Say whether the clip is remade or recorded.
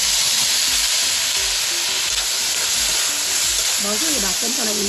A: recorded